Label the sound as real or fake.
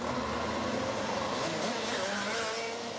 real